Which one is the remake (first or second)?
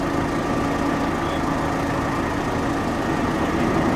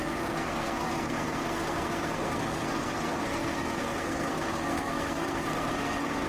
second